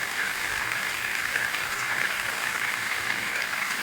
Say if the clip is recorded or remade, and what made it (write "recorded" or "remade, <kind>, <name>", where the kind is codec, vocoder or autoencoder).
remade, codec, DAC